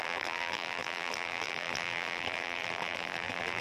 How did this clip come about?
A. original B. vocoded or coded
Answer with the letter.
B